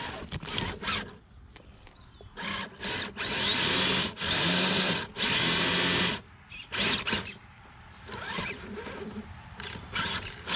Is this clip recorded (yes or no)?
yes